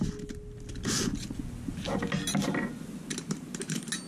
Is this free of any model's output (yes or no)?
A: yes